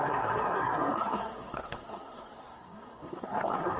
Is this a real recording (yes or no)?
no